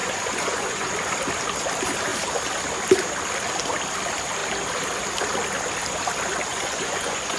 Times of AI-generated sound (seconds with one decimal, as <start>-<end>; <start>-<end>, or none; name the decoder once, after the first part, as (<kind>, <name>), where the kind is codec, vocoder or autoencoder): 0.0-0.9 (vocoder, Vocos); 6.5-7.4